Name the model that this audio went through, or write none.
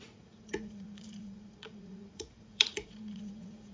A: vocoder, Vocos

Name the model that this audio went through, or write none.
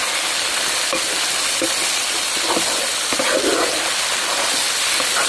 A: none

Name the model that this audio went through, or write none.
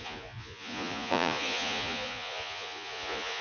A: vocoder, Vocos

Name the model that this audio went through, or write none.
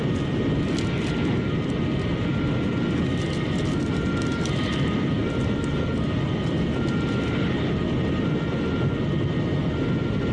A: none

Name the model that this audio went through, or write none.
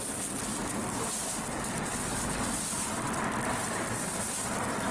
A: none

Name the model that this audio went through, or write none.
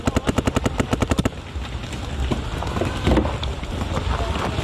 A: none